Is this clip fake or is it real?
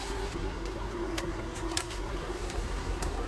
fake